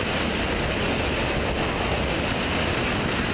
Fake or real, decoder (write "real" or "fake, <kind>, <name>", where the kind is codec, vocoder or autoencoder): real